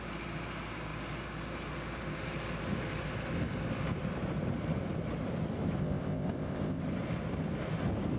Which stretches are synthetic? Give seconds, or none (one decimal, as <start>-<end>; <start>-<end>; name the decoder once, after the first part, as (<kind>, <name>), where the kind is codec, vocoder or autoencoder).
5.8-6.8 (codec, ZipCodec)

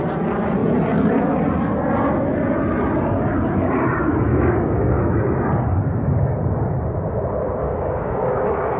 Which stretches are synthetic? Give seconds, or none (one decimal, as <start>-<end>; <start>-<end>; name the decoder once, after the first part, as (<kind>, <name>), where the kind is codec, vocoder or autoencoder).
4.3-5.0 (codec, DAC); 7.6-8.8

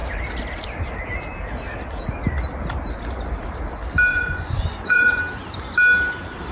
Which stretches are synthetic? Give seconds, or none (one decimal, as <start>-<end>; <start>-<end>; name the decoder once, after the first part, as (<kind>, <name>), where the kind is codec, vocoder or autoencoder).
4.1-5.2 (vocoder, Vocos)

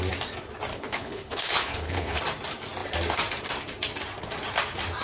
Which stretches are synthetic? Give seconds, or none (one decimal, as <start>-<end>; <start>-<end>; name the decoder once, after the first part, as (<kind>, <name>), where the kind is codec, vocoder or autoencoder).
0.7-2.2 (codec, HILCodec)

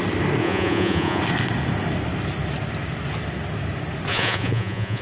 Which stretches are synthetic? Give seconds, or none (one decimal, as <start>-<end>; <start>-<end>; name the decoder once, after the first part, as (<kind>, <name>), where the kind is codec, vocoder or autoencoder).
0.4-1.2 (vocoder, Vocos); 4.1-5.0

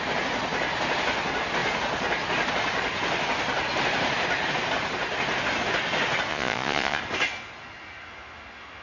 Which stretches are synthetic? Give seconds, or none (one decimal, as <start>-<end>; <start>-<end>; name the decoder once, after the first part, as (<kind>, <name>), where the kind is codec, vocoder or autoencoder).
6.3-7.0 (vocoder, Vocos)